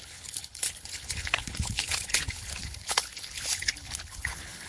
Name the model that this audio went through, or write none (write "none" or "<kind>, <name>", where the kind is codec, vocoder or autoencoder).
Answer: codec, HILCodec